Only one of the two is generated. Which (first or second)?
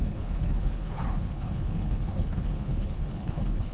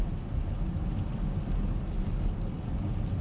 first